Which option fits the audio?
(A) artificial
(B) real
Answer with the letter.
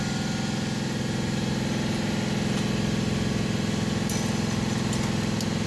B